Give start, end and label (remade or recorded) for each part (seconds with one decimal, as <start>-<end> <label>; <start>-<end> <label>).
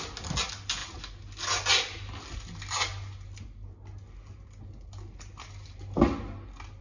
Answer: 0.0-6.8 recorded